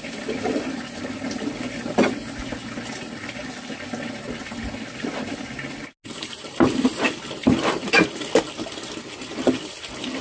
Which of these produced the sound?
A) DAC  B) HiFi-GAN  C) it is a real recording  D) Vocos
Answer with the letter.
C